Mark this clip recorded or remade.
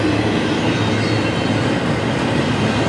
recorded